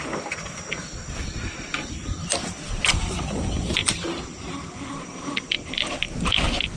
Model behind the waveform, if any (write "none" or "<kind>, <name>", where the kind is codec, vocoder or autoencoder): none